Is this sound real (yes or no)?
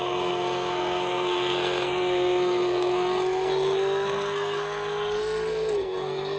no